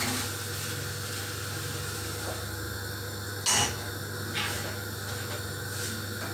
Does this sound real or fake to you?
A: real